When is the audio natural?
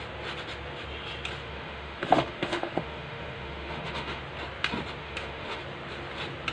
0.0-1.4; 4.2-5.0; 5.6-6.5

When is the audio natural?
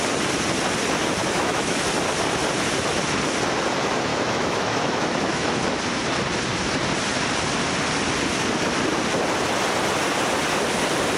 0.0-1.2; 1.8-4.1; 5.6-11.2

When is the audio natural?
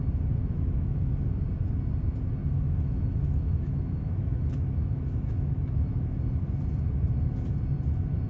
0.0-0.4; 1.1-2.4; 6.2-8.3